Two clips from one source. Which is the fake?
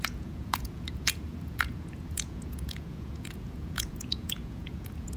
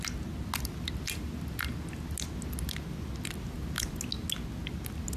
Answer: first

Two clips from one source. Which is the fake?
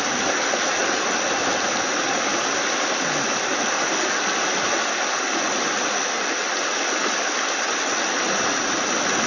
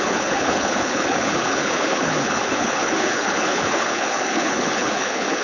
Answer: second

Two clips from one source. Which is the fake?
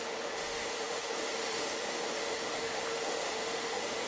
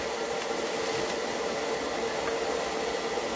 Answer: first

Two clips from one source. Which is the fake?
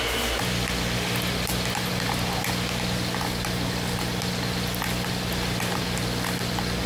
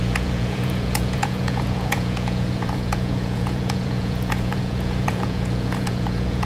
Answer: second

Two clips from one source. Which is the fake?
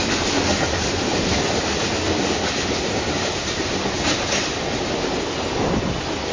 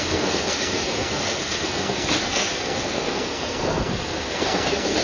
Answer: second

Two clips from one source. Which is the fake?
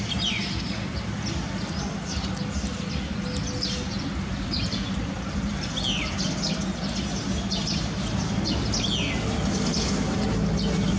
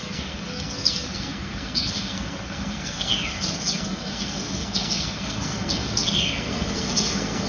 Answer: second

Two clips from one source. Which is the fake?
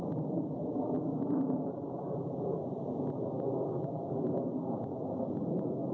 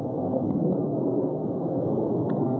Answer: second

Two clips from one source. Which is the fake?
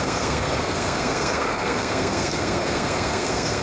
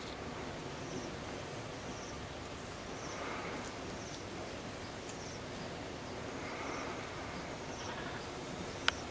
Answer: first